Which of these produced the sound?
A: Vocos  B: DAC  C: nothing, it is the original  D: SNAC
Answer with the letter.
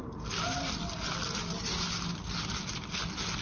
C